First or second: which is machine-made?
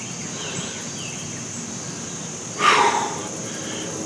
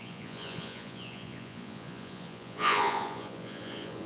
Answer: second